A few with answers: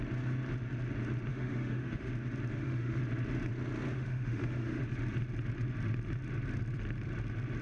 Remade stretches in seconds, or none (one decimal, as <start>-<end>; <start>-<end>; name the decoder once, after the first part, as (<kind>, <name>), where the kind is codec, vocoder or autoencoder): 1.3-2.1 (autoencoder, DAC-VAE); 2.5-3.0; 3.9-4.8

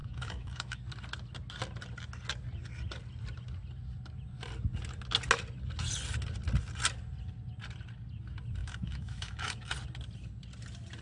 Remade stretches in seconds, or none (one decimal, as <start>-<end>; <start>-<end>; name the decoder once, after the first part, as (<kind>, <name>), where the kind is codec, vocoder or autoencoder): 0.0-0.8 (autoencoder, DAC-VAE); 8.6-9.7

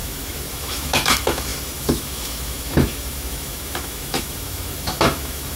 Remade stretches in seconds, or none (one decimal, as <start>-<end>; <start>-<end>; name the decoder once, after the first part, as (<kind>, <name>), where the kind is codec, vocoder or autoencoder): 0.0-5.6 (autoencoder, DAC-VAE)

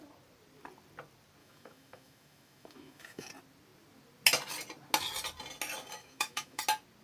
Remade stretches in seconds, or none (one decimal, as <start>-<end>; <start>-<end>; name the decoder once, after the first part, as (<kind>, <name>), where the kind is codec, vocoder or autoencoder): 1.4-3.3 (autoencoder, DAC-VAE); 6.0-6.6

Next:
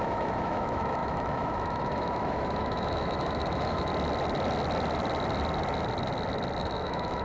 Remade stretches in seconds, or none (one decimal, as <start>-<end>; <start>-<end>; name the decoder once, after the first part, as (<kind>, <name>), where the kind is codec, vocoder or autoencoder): 0.0-3.9 (autoencoder, DAC-VAE); 6.6-7.2

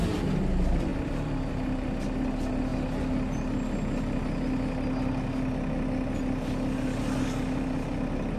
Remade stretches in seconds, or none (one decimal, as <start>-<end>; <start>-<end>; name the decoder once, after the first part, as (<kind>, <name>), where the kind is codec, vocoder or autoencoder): none

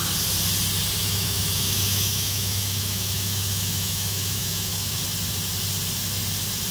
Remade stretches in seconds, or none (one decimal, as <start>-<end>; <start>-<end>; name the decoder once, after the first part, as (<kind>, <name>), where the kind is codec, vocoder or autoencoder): 1.0-5.0 (autoencoder, DAC-VAE)

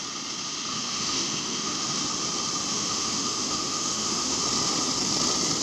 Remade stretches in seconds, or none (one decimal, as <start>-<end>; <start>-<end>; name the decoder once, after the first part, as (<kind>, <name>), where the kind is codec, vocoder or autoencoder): 0.7-2.0 (autoencoder, DAC-VAE); 2.7-4.4